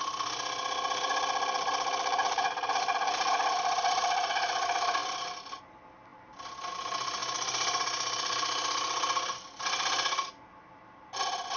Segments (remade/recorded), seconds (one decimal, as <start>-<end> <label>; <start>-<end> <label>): 0.0-1.1 recorded; 1.1-4.3 remade; 4.3-5.0 recorded; 5.0-5.6 remade; 5.6-11.6 recorded